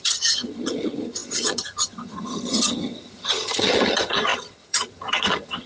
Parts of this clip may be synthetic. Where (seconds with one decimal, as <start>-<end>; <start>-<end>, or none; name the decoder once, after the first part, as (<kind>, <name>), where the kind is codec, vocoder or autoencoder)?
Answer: 0.0-5.7 (vocoder, HiFi-GAN)